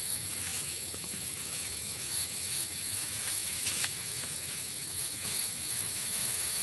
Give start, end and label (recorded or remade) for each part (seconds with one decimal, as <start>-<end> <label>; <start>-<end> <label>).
0.0-6.6 remade